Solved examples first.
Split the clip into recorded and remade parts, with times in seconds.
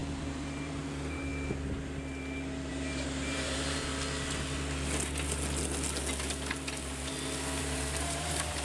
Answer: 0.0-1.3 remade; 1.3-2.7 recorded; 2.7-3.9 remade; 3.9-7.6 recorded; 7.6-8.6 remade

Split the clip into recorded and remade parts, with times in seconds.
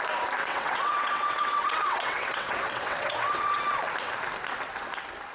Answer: 0.0-0.4 recorded; 0.4-3.6 remade; 3.6-5.3 recorded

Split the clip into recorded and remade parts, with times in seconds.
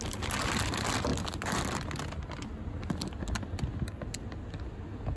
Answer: 0.0-5.2 recorded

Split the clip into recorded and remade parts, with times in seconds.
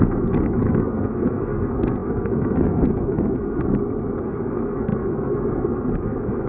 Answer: 0.0-3.7 remade; 3.7-4.2 recorded; 4.2-6.5 remade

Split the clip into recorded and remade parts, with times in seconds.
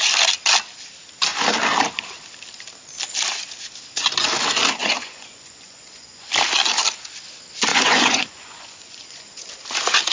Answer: 0.0-4.8 recorded; 4.8-6.3 remade; 6.3-7.7 recorded; 7.7-9.5 remade; 9.5-10.1 recorded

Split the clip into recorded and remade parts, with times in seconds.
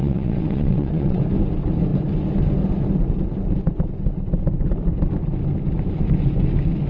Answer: 0.0-1.2 remade; 1.2-6.9 recorded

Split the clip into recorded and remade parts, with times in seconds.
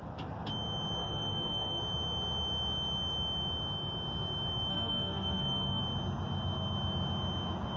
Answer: 0.0-1.0 recorded; 1.0-1.8 remade; 1.8-4.7 recorded; 4.7-5.8 remade; 5.8-7.8 recorded